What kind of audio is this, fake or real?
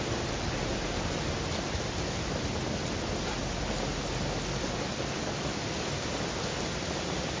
real